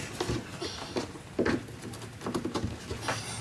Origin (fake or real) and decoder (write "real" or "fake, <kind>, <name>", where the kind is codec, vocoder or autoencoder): real